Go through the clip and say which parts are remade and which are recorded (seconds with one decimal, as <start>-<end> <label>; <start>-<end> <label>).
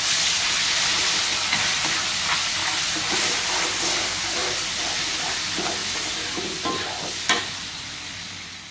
0.0-2.6 recorded; 2.6-3.5 remade; 3.5-4.4 recorded; 4.4-5.2 remade; 5.2-8.7 recorded